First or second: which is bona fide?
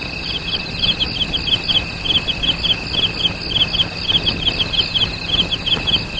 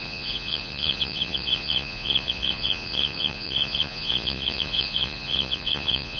first